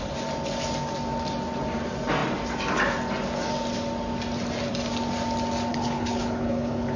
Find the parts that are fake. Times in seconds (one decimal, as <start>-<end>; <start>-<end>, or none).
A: 5.7-7.0